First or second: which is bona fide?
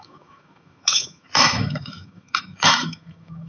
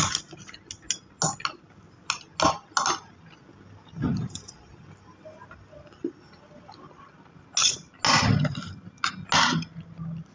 second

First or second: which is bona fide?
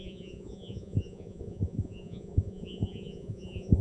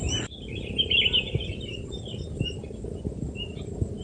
second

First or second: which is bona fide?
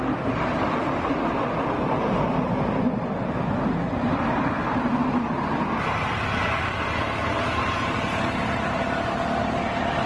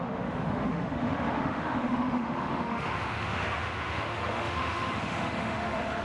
first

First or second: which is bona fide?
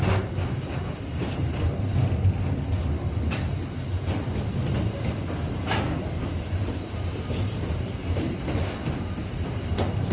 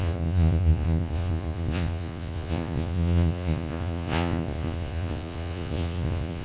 first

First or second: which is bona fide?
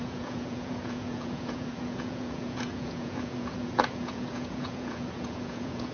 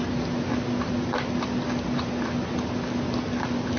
second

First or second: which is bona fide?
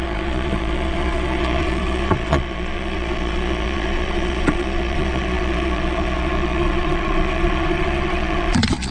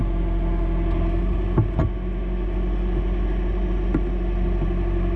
second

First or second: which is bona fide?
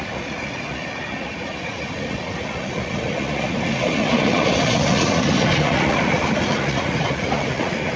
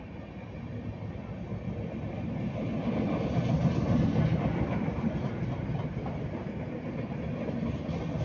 second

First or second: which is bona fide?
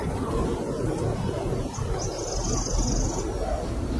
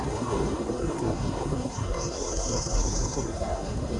first